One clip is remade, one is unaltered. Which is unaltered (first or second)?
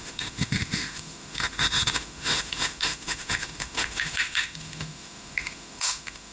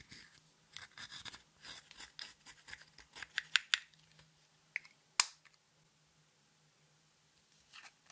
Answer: second